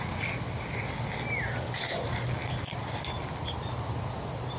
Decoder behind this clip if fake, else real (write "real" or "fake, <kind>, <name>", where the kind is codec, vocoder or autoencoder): real